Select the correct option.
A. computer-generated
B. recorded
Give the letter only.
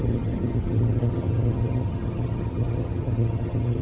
A